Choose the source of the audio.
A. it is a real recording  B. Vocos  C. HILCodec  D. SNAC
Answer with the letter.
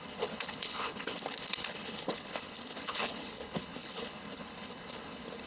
C